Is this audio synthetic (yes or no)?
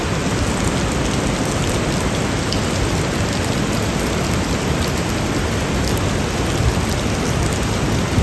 no